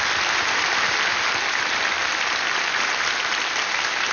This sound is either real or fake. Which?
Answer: real